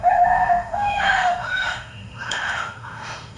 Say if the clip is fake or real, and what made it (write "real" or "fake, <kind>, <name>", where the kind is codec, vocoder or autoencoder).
fake, autoencoder, DAC-VAE